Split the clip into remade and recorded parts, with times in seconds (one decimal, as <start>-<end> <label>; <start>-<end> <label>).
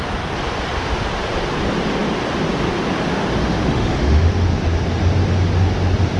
0.0-3.4 recorded; 3.4-4.3 remade; 4.3-6.2 recorded